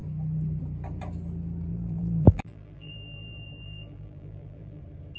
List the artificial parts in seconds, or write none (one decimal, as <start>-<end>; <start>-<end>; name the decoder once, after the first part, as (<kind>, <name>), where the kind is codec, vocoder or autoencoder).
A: 1.7-4.8 (vocoder, BigVGAN v2)